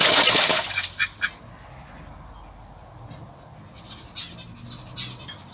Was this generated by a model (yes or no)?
no